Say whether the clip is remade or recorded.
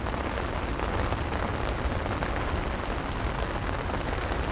recorded